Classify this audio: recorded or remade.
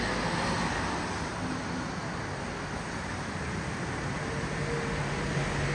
recorded